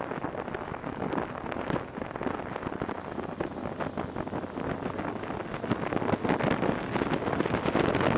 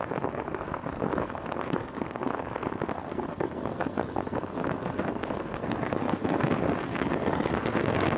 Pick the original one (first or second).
first